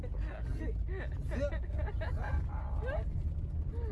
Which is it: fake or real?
real